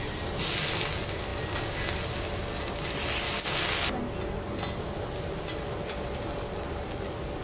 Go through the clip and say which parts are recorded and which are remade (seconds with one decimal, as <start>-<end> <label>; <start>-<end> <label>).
0.0-7.4 recorded